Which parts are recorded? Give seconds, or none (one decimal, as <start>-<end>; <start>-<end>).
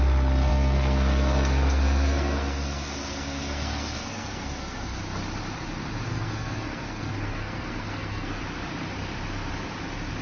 0.0-0.5; 5.0-6.1; 8.4-10.2